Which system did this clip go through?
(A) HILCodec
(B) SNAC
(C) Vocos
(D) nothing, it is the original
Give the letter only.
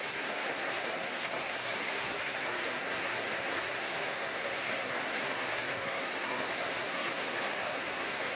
B